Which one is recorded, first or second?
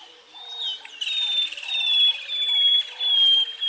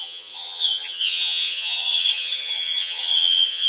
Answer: first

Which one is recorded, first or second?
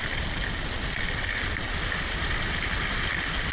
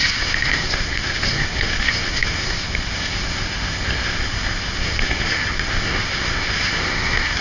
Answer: first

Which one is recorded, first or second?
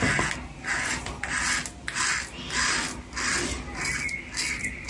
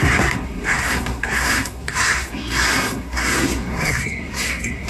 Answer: first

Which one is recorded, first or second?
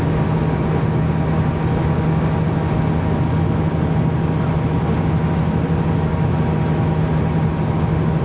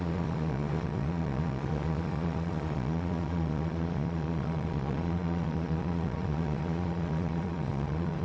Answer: first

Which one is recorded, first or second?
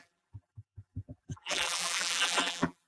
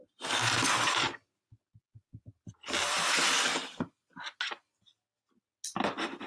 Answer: second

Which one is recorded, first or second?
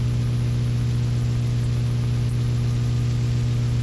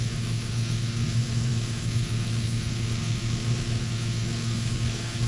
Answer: first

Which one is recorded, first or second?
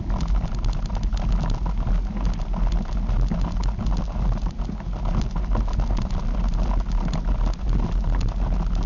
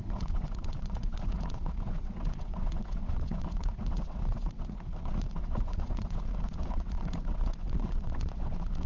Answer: first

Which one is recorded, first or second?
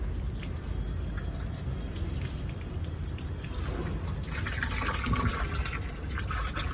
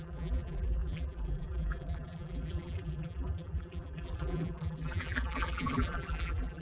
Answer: first